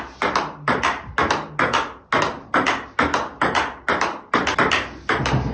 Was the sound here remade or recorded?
recorded